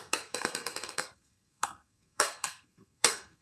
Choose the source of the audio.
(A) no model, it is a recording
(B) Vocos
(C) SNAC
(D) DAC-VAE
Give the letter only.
C